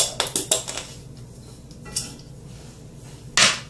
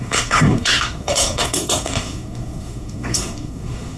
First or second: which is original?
first